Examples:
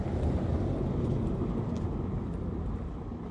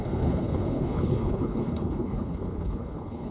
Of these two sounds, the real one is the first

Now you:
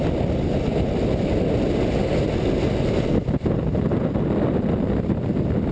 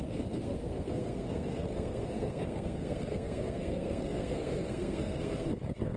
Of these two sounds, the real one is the first